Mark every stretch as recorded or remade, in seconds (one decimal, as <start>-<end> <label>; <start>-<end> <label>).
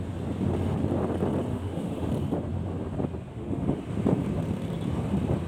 0.0-1.5 recorded; 1.5-2.1 remade; 2.1-3.3 recorded; 3.3-3.8 remade; 3.8-5.5 recorded